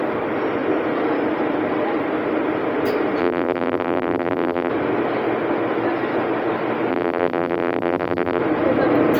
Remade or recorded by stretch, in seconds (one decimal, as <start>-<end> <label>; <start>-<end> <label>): 0.0-3.2 recorded; 3.2-4.7 remade; 4.7-6.9 recorded; 6.9-8.4 remade; 8.4-9.2 recorded